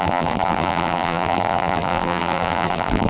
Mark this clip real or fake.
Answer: fake